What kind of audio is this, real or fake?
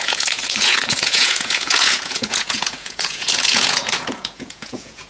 fake